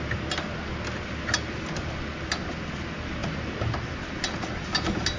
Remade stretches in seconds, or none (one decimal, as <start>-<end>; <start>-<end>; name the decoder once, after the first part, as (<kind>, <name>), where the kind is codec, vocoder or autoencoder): none